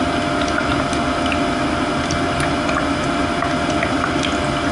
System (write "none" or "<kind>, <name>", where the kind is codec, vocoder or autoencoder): none